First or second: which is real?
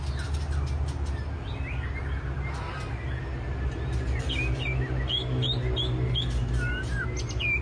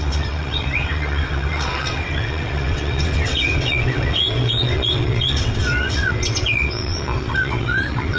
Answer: first